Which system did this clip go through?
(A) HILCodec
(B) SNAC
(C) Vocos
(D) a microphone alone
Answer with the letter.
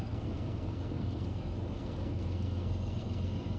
B